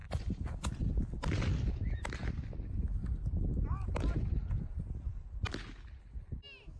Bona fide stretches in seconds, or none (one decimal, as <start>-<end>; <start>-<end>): 0.0-6.8